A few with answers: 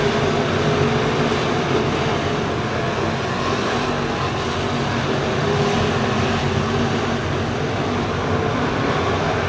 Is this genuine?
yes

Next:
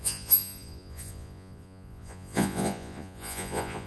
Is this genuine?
no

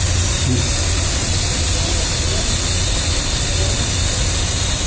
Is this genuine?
yes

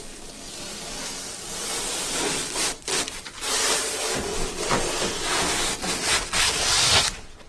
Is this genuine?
yes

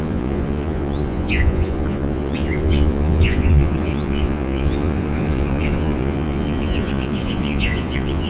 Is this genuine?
no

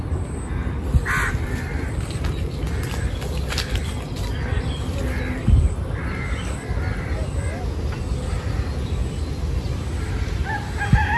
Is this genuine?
yes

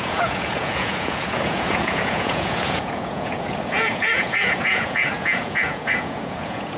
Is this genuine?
no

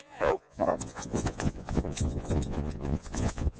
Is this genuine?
no